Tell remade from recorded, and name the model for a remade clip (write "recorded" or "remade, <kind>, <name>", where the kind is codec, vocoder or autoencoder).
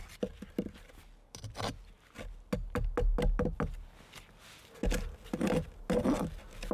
recorded